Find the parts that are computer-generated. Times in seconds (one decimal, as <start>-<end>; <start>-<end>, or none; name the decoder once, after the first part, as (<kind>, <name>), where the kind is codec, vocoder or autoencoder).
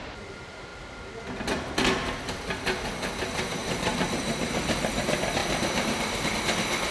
3.6-5.0 (vocoder, BigVGAN v2); 5.4-6.3